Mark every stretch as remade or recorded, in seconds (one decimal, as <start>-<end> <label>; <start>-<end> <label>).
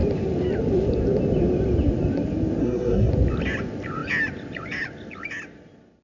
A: 0.0-2.6 recorded; 2.6-3.1 remade; 3.1-6.0 recorded